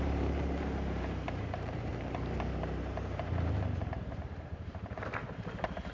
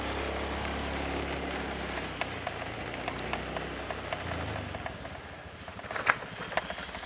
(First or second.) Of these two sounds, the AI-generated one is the first